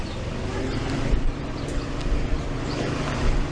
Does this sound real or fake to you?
real